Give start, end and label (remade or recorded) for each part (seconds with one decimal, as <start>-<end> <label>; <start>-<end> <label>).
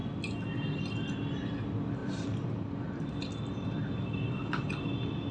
0.0-2.0 recorded; 2.0-5.3 remade